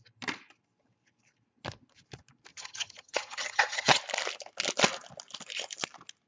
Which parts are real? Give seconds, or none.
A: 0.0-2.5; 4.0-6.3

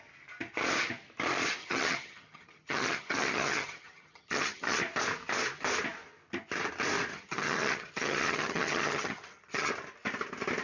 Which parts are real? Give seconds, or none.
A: 0.0-1.6; 4.8-7.1; 9.7-10.6

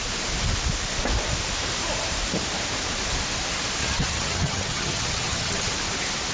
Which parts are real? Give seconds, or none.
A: 0.0-3.8; 5.7-6.3

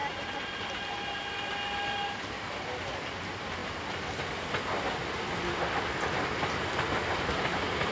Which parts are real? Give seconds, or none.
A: 0.0-7.9

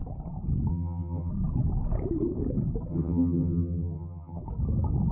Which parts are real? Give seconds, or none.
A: 0.0-0.7; 1.3-2.9; 4.4-5.1